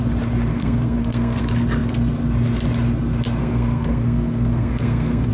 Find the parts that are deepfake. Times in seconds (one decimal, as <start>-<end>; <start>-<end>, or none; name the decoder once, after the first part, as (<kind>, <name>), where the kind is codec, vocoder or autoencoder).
0.5-1.4 (codec, SNAC); 3.4-5.3